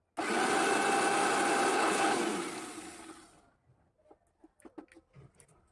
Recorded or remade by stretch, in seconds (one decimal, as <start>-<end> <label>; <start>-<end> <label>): 0.0-1.7 recorded; 1.7-2.2 remade; 2.2-5.7 recorded